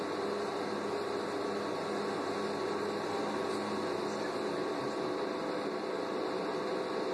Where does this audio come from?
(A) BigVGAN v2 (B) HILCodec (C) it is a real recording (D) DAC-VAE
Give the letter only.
C